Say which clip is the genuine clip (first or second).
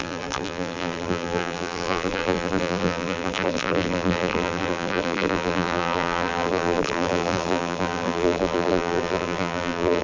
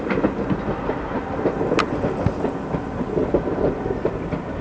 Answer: second